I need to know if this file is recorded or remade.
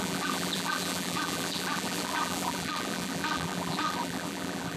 remade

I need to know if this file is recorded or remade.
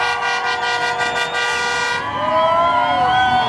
recorded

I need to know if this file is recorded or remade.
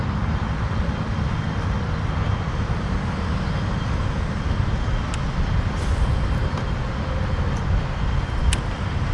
recorded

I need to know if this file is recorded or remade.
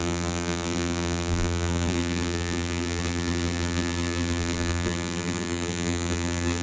remade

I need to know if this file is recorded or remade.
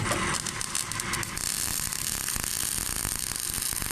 recorded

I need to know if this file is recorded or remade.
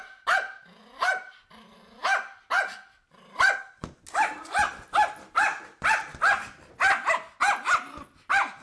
recorded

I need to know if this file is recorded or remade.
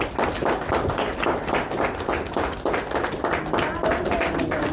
recorded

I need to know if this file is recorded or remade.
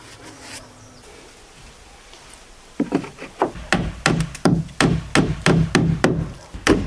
recorded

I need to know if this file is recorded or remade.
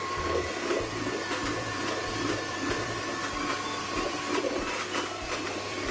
remade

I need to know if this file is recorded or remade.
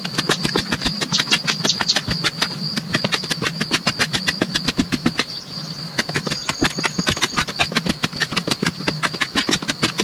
recorded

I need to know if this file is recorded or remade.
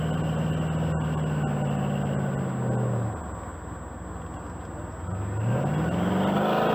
recorded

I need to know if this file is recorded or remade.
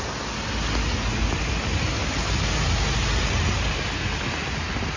recorded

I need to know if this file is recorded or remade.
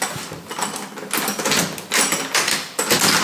recorded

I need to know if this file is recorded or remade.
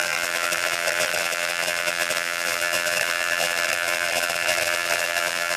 remade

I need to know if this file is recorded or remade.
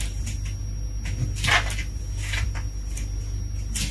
recorded